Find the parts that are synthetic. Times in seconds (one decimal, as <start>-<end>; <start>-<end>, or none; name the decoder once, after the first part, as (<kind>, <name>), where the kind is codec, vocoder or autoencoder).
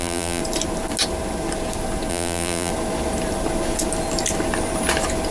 0.0-0.4 (vocoder, BigVGAN v2); 2.1-2.7